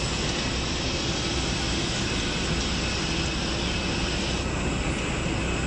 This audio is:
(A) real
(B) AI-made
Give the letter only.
A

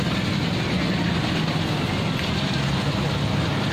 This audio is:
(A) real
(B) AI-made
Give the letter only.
A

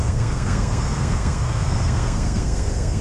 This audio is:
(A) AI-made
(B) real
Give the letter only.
A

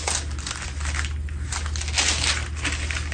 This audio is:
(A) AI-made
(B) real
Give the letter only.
B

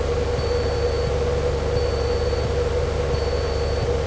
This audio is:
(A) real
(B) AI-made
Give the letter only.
A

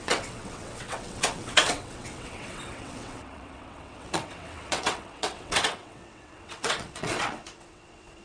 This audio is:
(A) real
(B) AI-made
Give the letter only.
B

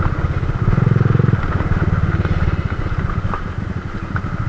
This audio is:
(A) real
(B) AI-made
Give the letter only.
A